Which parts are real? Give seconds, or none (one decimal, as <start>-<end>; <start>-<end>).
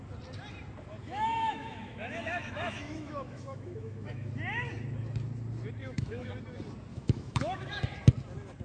0.0-1.0; 4.3-5.8; 6.3-6.9; 7.8-8.6